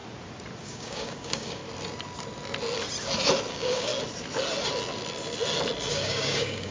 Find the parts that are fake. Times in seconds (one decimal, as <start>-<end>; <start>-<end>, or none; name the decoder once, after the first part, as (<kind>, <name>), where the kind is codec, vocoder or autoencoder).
0.6-1.6 (codec, DAC); 3.5-3.9; 5.9-6.7